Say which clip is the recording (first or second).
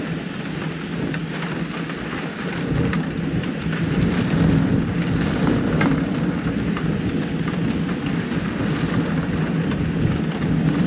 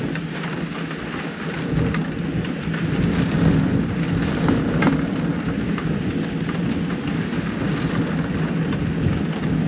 second